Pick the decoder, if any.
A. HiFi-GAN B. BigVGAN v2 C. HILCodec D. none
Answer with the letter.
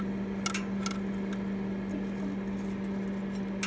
D